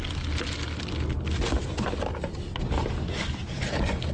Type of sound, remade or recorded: recorded